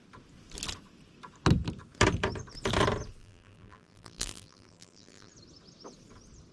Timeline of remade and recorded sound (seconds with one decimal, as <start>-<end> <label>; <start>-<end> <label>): 0.0-3.2 recorded; 3.2-5.3 remade; 5.3-6.5 recorded

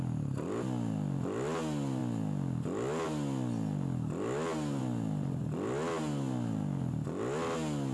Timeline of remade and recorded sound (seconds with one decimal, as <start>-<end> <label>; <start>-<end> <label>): 0.0-7.9 recorded

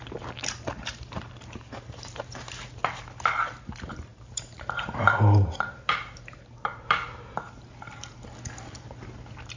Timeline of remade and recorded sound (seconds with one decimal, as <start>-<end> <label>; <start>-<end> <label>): 0.0-0.9 recorded; 0.9-2.8 remade; 2.8-4.1 recorded; 4.1-8.1 remade; 8.1-9.6 recorded

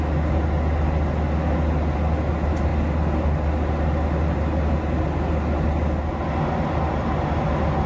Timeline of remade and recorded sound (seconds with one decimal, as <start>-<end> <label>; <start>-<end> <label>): 0.0-7.9 recorded

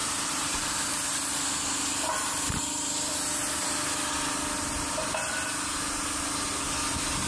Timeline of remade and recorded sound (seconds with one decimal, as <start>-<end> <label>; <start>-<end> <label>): 0.0-0.7 remade; 0.7-7.3 recorded

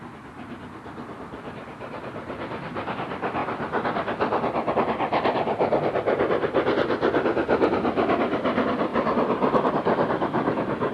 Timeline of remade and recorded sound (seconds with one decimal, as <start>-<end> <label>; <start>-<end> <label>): 0.0-3.4 remade; 3.4-4.7 recorded; 4.7-8.9 remade; 8.9-9.7 recorded; 9.7-10.9 remade

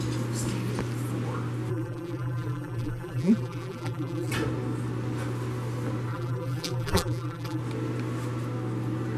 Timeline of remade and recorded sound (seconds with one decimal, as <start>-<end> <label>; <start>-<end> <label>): 0.0-1.7 recorded; 1.7-4.3 remade; 4.3-6.1 recorded; 6.1-7.6 remade; 7.6-9.2 recorded